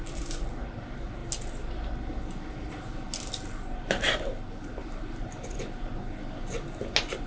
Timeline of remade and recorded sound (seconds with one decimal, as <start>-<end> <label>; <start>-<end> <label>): 0.0-7.3 recorded